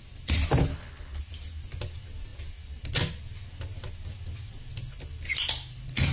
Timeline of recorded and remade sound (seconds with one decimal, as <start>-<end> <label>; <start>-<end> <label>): 0.0-0.7 recorded; 0.7-1.2 remade; 1.2-6.1 recorded